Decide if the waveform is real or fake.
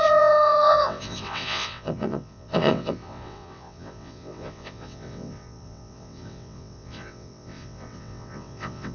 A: fake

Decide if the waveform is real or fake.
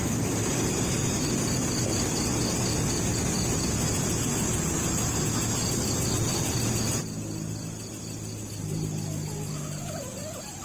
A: real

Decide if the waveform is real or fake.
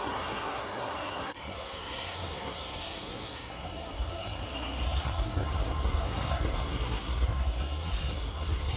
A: fake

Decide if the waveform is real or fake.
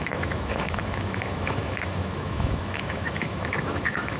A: fake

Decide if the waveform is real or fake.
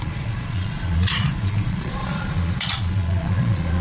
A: fake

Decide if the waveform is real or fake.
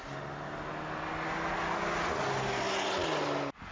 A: real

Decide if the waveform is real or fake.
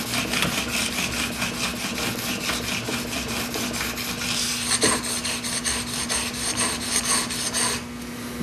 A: real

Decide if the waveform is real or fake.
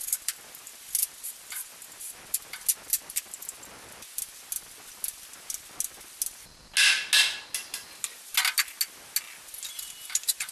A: real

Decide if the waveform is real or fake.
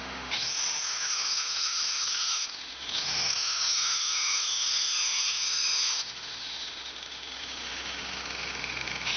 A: fake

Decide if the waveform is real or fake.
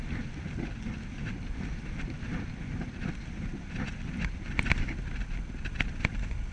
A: real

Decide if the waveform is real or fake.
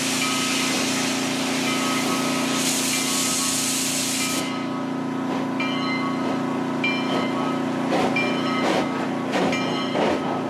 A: real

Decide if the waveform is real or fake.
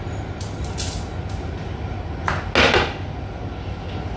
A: real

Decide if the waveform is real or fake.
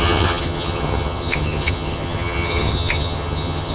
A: fake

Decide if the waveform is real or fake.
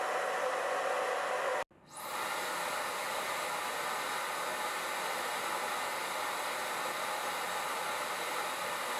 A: real